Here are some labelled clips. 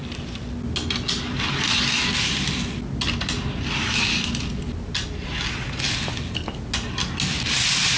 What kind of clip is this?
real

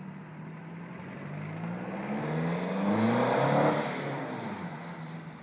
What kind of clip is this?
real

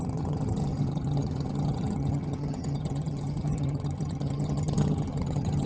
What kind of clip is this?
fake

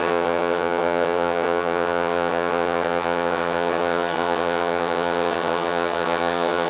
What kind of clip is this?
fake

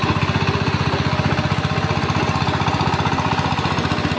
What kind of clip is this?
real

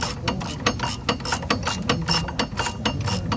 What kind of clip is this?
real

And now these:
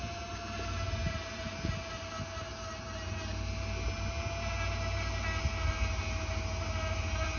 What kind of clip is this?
real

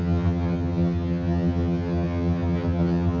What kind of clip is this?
fake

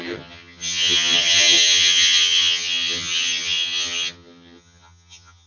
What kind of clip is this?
fake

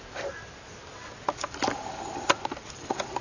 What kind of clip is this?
real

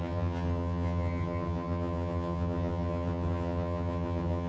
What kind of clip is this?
fake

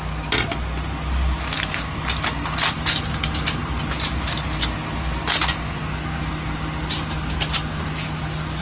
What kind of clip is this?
real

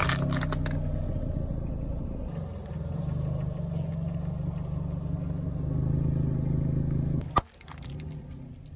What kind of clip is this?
real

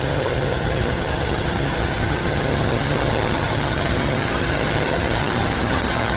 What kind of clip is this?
fake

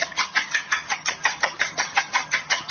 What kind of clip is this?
fake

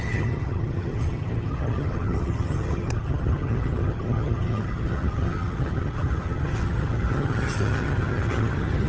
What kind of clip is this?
fake